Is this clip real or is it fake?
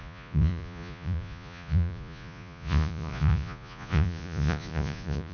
fake